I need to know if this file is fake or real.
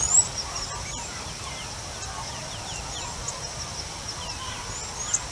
real